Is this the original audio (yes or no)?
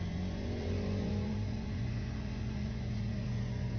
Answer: no